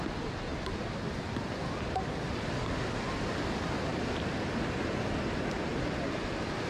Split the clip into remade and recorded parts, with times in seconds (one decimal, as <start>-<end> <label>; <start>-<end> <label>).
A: 0.0-6.7 recorded